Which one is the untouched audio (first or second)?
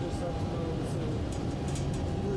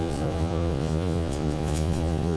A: first